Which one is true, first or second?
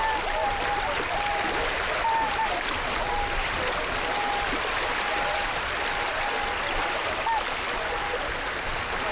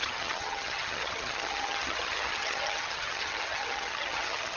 first